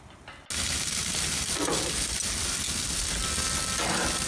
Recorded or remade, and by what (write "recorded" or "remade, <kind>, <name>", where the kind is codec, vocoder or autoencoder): recorded